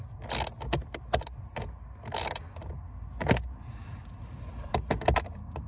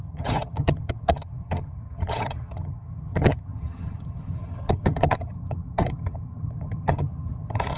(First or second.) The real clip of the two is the first